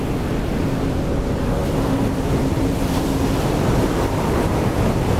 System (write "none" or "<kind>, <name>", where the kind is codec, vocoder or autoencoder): none